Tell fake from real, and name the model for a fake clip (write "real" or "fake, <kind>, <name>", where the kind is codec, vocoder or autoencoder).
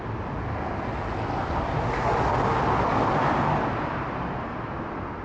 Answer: real